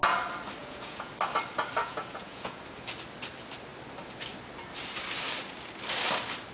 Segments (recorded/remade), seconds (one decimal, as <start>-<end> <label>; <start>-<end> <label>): 0.0-0.6 recorded; 0.6-1.1 remade; 1.1-1.8 recorded; 1.8-2.6 remade; 2.6-6.5 recorded